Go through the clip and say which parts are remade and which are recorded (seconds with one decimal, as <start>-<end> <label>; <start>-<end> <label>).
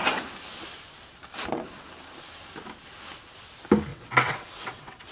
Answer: 0.0-3.9 recorded; 3.9-5.1 remade